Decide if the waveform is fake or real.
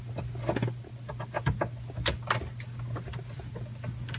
real